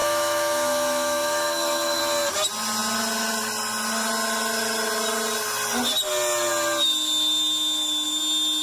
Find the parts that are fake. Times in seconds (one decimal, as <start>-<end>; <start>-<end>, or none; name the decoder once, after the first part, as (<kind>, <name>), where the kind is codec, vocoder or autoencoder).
0.0-2.0 (autoencoder, DAC-VAE)